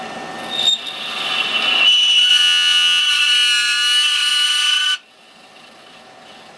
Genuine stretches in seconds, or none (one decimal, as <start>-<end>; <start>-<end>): 0.0-2.3; 3.0-6.6